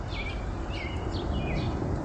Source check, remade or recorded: recorded